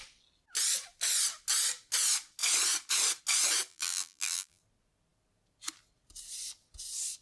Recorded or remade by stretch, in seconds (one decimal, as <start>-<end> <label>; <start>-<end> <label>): 0.0-3.7 recorded; 3.7-4.6 remade; 4.6-7.2 recorded

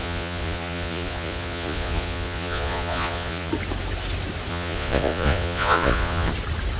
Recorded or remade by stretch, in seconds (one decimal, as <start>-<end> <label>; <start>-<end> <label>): 0.0-3.5 remade; 3.5-4.5 recorded; 4.5-6.3 remade; 6.3-6.8 recorded

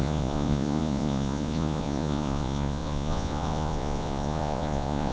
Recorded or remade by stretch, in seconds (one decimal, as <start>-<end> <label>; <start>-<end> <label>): 0.0-5.1 remade

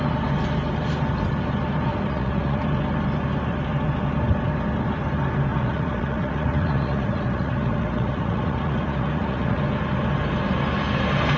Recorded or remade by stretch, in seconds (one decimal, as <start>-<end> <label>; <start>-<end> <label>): 0.0-1.9 recorded; 1.9-2.6 remade; 2.6-5.5 recorded; 5.5-9.6 remade; 9.6-11.4 recorded

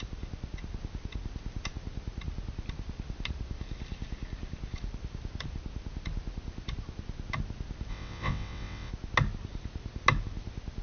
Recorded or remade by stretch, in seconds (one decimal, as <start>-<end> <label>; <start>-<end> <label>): 0.0-7.9 recorded; 7.9-8.9 remade; 8.9-10.8 recorded

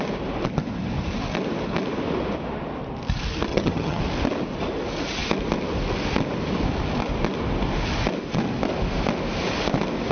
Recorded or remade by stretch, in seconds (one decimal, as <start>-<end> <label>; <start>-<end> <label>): 0.0-3.5 recorded; 3.5-4.0 remade; 4.0-10.1 recorded

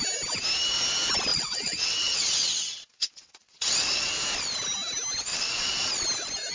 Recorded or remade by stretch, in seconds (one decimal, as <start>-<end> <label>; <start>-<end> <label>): 0.0-1.3 recorded; 1.3-4.1 remade; 4.1-5.3 recorded; 5.3-5.9 remade; 5.9-6.5 recorded

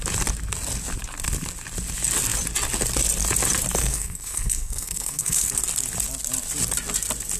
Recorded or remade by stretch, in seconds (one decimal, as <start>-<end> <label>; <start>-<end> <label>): 0.0-3.8 recorded; 3.8-5.5 remade; 5.5-7.4 recorded